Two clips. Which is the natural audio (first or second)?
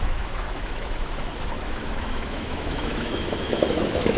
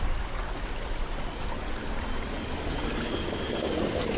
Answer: second